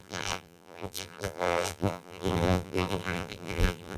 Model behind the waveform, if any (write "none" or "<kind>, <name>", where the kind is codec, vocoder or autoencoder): vocoder, BigVGAN v2